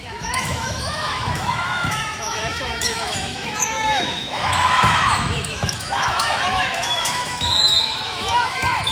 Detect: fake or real fake